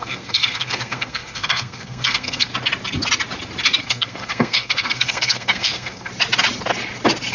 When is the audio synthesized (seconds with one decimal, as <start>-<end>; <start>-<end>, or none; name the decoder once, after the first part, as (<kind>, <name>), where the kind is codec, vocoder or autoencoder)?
0.0-2.5 (codec, SNAC); 3.8-6.1